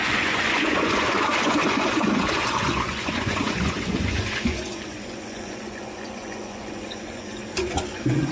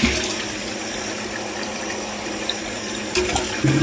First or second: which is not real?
first